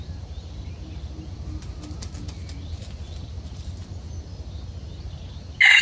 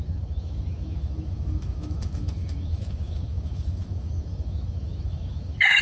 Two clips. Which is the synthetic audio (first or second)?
second